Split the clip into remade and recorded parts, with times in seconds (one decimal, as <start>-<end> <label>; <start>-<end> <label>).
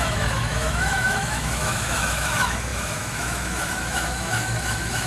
0.0-5.1 remade